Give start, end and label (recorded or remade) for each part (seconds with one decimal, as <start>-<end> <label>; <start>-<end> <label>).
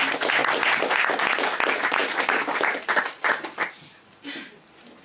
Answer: 0.0-5.0 recorded